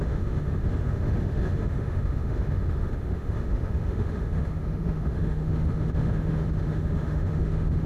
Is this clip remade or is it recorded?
remade